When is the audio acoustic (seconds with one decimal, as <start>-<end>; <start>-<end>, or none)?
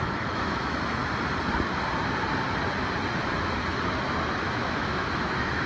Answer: 1.0-4.4